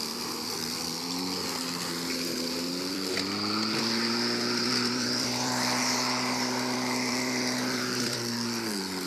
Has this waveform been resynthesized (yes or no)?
yes